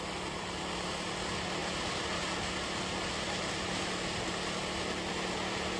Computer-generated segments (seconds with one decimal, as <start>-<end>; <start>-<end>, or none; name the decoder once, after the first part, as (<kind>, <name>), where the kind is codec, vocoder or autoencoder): none